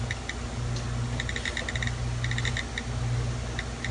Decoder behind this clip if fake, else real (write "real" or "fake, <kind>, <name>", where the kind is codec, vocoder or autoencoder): real